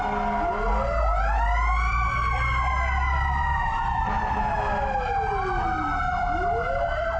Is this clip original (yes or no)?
yes